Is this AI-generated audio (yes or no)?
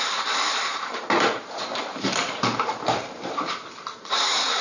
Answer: yes